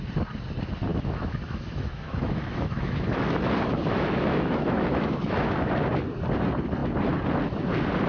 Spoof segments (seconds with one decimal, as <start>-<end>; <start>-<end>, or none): 0.9-5.7